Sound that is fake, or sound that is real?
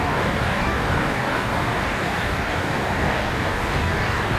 fake